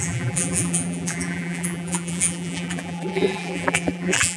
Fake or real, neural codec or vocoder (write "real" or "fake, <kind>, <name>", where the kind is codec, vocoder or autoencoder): fake, vocoder, BigVGAN v2